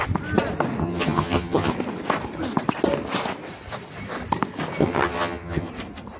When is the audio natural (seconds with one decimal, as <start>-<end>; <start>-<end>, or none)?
0.0-0.8; 1.7-4.8; 5.7-6.2